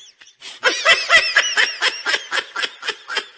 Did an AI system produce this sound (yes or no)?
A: no